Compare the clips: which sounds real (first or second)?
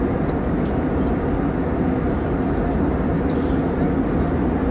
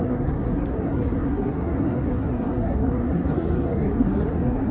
first